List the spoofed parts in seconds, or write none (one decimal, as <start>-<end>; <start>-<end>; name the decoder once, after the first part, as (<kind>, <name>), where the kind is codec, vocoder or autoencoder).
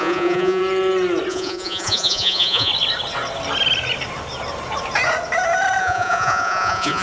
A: 0.0-0.6 (vocoder, Vocos); 1.3-2.7; 5.8-7.0